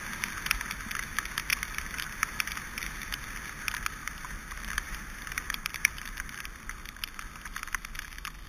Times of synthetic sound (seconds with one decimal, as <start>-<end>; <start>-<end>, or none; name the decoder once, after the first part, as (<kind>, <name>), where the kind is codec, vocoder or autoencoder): 1.5-2.8 (vocoder, BigVGAN v2); 4.0-6.7